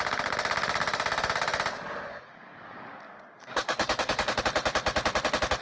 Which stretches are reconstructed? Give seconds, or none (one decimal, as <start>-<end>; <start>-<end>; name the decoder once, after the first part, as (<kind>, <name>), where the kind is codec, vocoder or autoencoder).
2.1-4.4 (codec, DAC)